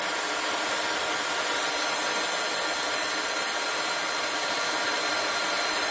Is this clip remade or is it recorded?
recorded